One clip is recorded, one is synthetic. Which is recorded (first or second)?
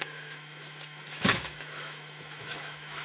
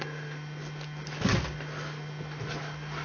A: second